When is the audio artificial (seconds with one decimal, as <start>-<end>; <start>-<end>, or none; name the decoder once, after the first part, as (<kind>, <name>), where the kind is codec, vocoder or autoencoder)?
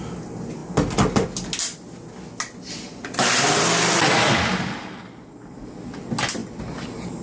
none